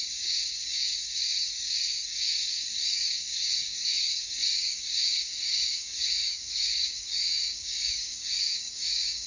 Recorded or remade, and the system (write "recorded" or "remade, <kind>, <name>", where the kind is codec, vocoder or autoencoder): remade, codec, DAC